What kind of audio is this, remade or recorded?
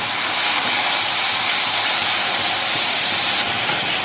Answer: remade